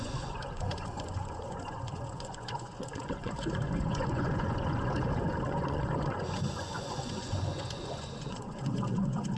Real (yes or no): no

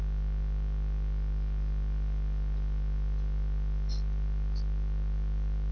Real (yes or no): yes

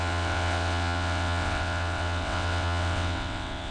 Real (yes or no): no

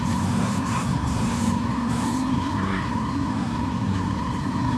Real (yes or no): no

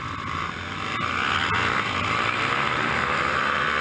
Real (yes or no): yes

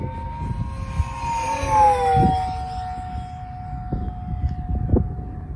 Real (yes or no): yes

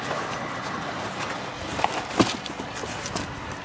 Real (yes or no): yes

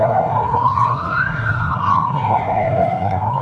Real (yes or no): no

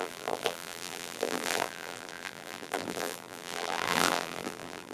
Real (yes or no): no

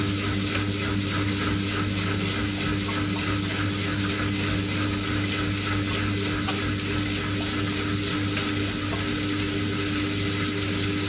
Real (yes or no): yes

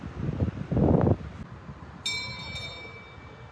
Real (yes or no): yes